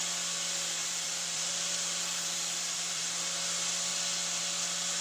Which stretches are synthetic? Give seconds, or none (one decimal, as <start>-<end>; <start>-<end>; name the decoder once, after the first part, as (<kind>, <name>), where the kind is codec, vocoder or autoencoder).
0.8-3.4 (vocoder, BigVGAN v2)